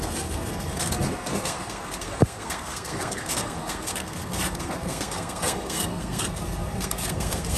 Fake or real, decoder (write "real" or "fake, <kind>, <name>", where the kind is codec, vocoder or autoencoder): fake, codec, SNAC